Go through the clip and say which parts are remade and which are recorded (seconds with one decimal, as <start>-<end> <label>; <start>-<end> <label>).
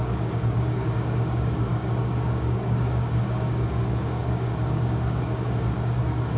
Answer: 0.0-6.4 remade